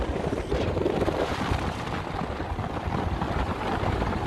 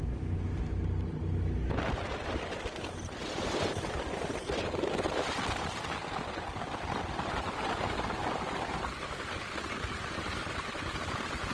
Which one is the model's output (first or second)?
first